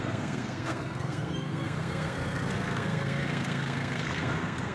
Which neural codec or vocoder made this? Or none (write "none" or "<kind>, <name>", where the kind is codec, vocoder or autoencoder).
codec, SNAC